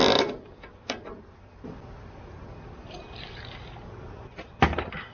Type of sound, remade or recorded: remade